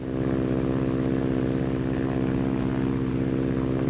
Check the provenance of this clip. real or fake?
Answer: real